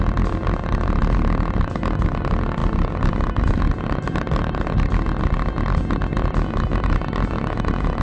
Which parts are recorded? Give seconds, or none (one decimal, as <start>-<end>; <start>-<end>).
0.0-8.0